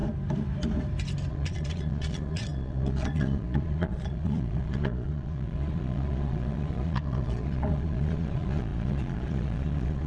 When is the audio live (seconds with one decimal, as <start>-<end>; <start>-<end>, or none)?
0.0-1.3